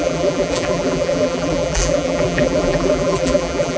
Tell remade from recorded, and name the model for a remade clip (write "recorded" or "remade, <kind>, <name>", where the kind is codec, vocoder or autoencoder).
remade, vocoder, BigVGAN v2